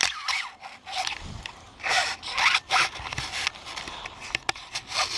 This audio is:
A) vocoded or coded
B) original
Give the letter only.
B